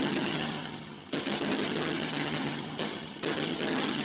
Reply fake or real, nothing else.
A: fake